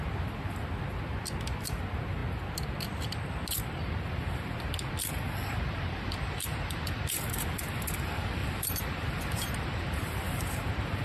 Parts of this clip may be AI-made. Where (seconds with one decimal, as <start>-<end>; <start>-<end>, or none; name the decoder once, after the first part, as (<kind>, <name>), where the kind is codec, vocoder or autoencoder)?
5.5-7.0 (vocoder, BigVGAN v2); 8.4-11.0